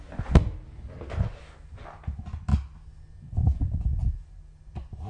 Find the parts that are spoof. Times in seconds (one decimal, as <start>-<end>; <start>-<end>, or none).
none